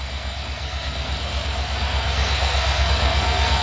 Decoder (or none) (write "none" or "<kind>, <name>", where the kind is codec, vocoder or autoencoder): codec, SNAC